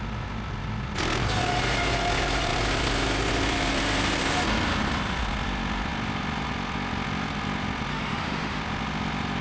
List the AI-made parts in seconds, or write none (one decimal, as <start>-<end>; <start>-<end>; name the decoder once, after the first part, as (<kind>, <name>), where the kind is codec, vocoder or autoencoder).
7.9-8.6 (autoencoder, DAC-VAE)

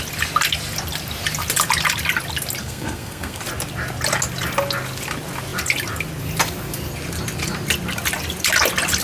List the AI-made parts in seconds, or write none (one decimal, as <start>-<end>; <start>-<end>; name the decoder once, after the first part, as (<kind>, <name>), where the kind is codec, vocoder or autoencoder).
2.6-3.4 (codec, SNAC)